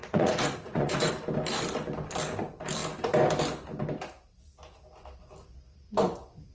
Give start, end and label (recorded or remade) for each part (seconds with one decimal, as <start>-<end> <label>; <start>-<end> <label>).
0.0-1.1 remade; 1.1-6.5 recorded